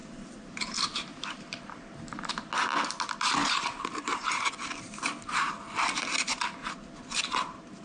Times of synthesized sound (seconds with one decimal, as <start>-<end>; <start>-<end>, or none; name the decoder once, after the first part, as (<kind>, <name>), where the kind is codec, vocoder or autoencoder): 0.0-2.3 (vocoder, BigVGAN v2); 3.4-4.5; 6.6-7.8